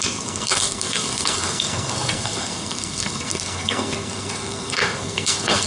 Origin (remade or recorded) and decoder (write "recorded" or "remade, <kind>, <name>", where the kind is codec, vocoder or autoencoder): remade, codec, SNAC